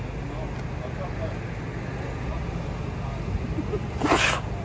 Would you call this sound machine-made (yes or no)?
no